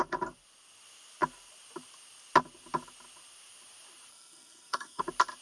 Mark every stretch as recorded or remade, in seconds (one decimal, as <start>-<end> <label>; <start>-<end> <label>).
0.0-4.1 recorded; 4.1-5.0 remade; 5.0-5.4 recorded